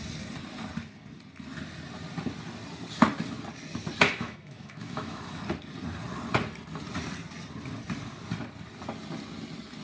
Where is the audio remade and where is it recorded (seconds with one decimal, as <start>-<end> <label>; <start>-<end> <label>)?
0.0-4.1 recorded; 4.1-5.4 remade; 5.4-9.8 recorded